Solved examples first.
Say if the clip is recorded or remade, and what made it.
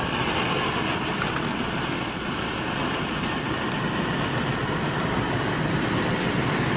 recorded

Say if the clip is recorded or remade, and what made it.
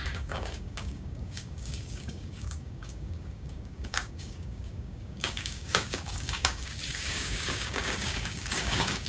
remade, codec, DAC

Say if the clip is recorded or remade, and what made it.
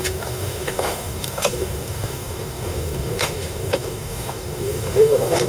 remade, codec, DAC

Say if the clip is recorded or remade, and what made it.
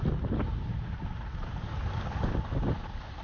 recorded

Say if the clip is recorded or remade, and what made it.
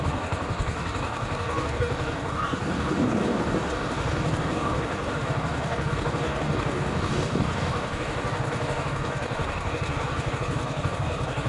remade, codec, DAC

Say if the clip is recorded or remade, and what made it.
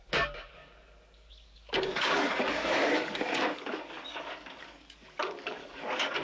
remade, codec, DAC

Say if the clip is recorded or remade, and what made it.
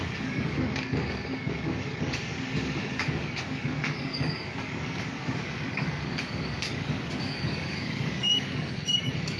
remade, codec, DAC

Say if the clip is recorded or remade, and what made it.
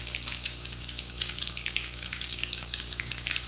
remade, codec, DAC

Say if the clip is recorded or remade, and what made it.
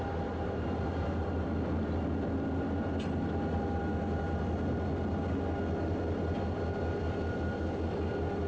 recorded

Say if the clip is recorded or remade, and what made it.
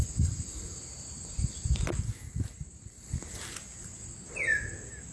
recorded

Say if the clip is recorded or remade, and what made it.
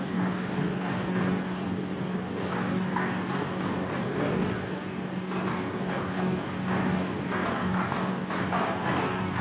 remade, codec, DAC